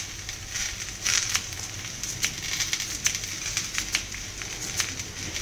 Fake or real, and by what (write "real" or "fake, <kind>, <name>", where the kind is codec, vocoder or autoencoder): real